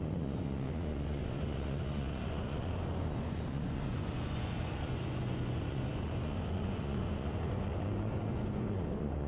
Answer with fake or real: fake